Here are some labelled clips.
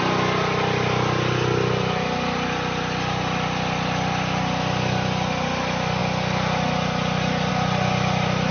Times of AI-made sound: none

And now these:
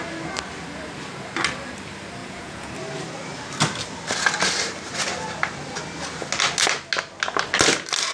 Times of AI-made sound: 2.2-2.7

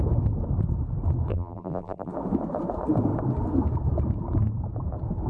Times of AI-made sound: 1.3-2.1

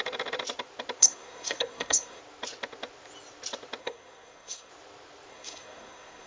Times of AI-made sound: 1.0-2.2; 3.8-4.7; 5.3-6.3

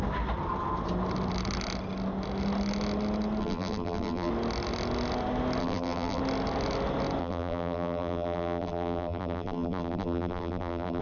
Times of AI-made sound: 3.4-4.3; 5.6-6.2; 7.2-11.0